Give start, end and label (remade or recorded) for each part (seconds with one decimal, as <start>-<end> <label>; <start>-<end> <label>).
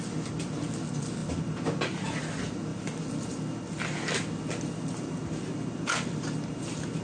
0.0-1.2 recorded; 1.2-2.0 remade; 2.0-2.7 recorded; 2.7-7.0 remade